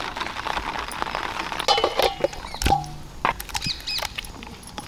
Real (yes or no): yes